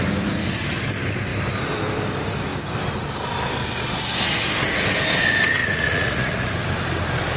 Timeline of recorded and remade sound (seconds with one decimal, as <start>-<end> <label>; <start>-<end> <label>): 0.0-5.6 recorded; 5.6-6.5 remade; 6.5-7.4 recorded

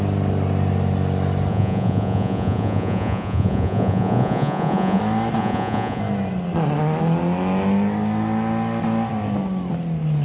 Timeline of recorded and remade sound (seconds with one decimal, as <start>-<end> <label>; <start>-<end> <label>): 0.0-1.5 recorded; 1.5-5.0 remade; 5.0-5.4 recorded; 5.4-6.0 remade; 6.0-10.2 recorded

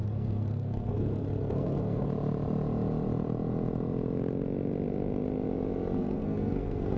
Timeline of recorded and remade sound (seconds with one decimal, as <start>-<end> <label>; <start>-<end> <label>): 0.0-2.1 remade; 2.1-6.0 recorded; 6.0-7.0 remade

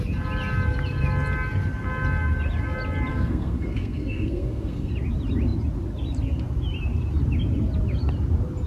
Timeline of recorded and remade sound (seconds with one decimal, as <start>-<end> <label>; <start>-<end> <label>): 0.0-3.1 recorded; 3.1-4.9 remade; 4.9-8.7 recorded

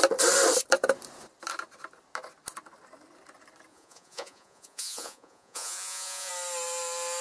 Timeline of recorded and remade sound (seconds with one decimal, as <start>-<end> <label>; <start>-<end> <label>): 0.0-3.7 recorded; 3.7-6.3 remade; 6.3-7.2 recorded